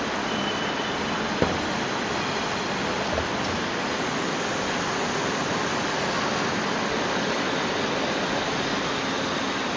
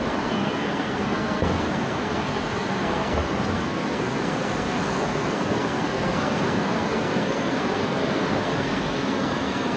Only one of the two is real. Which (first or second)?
first